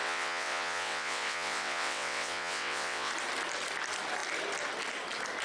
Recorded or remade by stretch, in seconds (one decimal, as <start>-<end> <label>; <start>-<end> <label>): 0.0-3.1 remade; 3.1-5.4 recorded